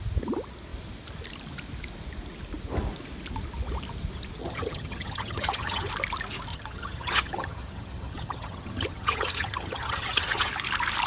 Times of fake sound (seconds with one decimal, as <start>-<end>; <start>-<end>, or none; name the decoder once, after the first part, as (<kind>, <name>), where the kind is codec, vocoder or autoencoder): 4.4-5.9 (vocoder, HiFi-GAN); 6.5-10.5